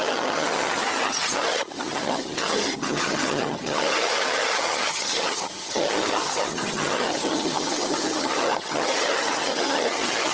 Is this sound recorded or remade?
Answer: remade